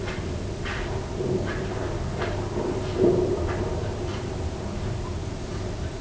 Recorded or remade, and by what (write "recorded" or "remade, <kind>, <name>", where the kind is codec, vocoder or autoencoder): recorded